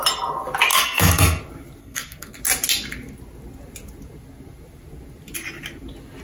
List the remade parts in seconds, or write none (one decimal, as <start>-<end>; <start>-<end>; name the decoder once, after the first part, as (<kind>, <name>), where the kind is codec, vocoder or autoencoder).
0.7-1.4 (codec, SNAC); 1.8-2.4